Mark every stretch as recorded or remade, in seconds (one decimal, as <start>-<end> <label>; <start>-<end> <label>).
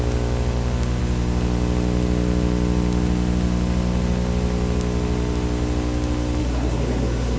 0.0-6.4 recorded; 6.4-7.4 remade